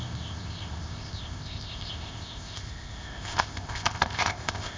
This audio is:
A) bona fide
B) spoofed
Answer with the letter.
B